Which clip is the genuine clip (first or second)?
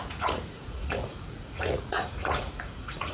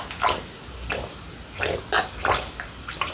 second